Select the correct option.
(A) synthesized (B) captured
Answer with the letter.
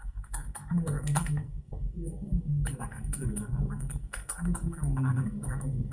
A